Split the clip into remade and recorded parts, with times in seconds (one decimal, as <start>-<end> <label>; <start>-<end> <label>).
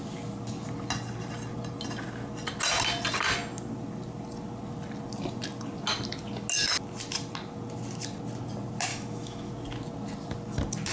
0.0-8.9 recorded; 8.9-9.5 remade; 9.5-10.9 recorded